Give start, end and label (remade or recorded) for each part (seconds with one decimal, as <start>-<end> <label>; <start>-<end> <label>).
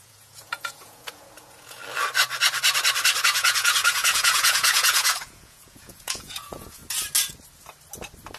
0.0-1.8 remade; 1.8-3.2 recorded; 3.2-6.8 remade; 6.8-8.4 recorded